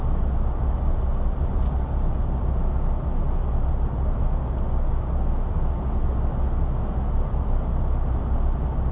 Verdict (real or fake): real